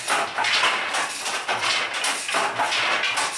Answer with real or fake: real